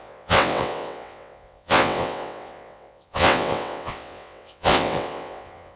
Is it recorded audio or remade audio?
remade